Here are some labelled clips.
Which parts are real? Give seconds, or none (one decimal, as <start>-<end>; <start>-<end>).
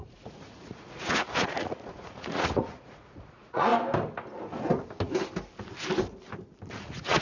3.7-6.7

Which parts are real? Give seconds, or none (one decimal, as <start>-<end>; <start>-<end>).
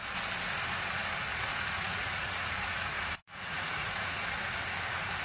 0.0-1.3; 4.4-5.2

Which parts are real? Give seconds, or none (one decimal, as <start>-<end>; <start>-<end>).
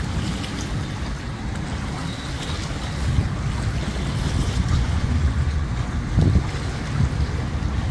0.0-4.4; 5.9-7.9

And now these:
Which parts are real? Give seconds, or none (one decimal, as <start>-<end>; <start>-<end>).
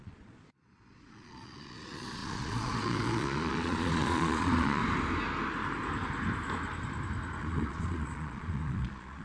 4.8-7.4